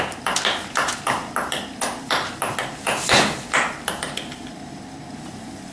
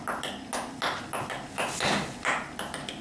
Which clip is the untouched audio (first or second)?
second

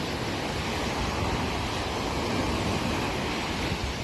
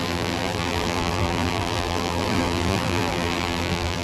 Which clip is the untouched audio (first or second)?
first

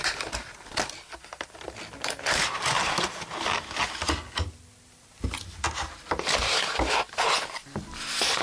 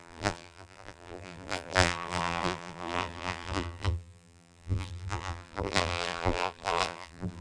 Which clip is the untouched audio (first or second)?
first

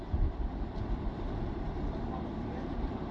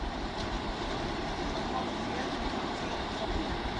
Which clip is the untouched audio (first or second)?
first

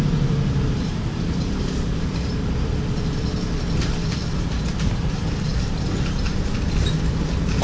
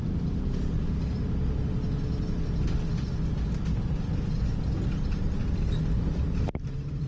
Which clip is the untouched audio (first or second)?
second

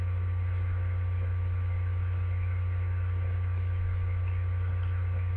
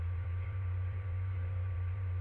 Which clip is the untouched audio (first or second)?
first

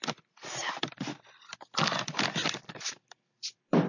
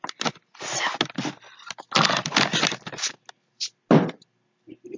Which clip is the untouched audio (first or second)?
second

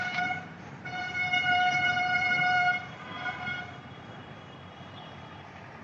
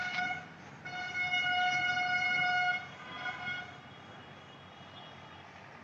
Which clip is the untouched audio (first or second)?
second